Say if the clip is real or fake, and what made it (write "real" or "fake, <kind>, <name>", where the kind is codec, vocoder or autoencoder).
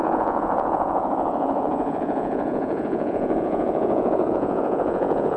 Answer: fake, vocoder, Vocos